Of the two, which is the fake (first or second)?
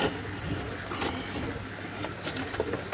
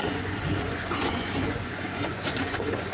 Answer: second